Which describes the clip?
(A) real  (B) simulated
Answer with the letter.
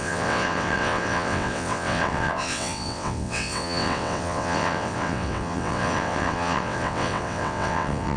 B